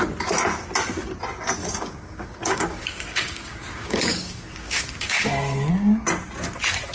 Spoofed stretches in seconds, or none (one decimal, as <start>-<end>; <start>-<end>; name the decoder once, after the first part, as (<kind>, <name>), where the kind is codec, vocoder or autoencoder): 1.6-5.7 (codec, DAC)